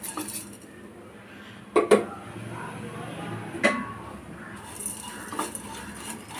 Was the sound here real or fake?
real